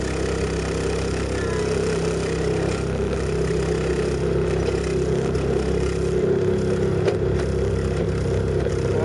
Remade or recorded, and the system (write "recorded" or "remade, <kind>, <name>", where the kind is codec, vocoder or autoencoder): recorded